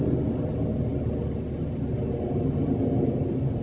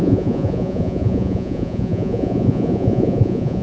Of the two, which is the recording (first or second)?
first